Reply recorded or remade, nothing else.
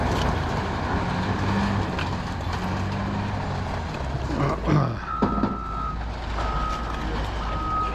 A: recorded